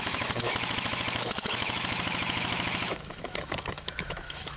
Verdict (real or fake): fake